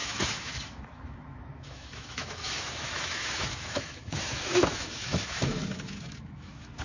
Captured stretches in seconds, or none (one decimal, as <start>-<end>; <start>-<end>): none